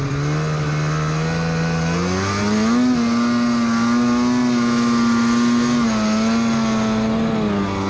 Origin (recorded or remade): recorded